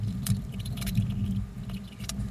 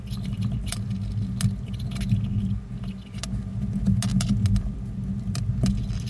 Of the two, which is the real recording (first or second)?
second